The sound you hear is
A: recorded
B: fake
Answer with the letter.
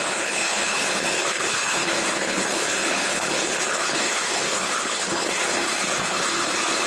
B